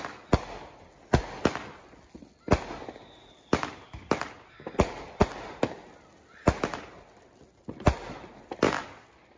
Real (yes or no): yes